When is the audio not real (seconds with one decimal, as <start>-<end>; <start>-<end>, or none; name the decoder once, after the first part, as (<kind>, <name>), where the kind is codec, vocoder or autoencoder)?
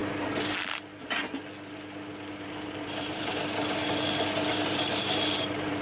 2.3-3.8 (vocoder, BigVGAN v2); 4.5-5.8